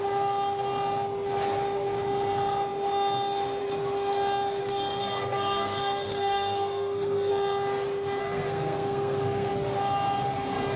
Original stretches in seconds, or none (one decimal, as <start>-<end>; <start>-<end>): 0.0-4.6; 7.3-8.2; 9.5-10.8